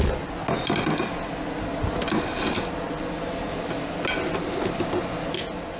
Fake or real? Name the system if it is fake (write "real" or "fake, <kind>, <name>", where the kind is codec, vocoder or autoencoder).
real